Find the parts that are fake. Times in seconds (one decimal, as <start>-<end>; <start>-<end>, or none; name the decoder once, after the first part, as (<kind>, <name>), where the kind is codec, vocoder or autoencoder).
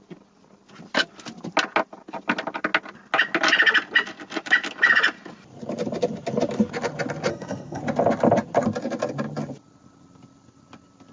7.3-7.8 (codec, SNAC)